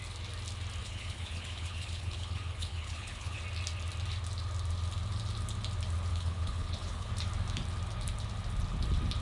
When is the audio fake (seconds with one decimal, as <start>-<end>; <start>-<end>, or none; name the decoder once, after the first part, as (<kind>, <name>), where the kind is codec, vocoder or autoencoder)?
0.8-3.4 (codec, HILCodec); 6.1-7.1